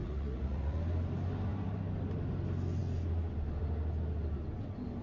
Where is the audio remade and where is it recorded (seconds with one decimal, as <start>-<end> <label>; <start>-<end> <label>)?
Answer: 0.0-0.8 remade; 0.8-5.0 recorded